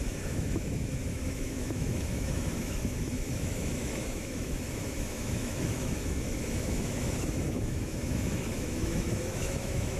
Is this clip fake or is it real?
fake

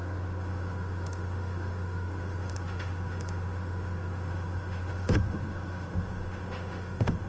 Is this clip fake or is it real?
fake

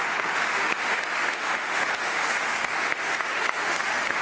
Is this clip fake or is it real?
fake